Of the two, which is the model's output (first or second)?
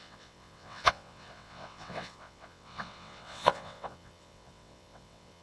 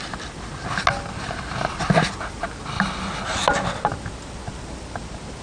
first